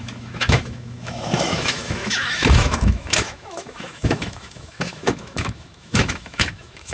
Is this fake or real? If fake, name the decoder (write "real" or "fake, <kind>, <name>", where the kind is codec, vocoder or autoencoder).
fake, autoencoder, DAC-VAE